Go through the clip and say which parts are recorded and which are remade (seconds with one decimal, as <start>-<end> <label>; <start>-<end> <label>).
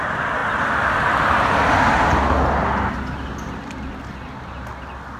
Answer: 0.0-5.2 recorded